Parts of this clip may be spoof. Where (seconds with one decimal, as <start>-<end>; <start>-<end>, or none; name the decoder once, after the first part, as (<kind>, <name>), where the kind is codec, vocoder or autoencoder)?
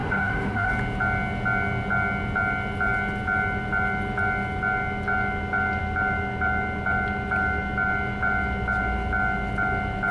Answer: 0.0-0.7 (autoencoder, DAC-VAE)